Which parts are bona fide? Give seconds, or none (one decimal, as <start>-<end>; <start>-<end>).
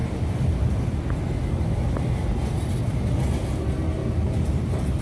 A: 0.0-4.0